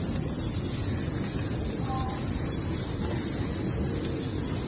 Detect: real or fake real